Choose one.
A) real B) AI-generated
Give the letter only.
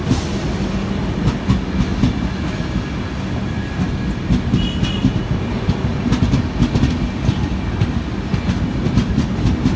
A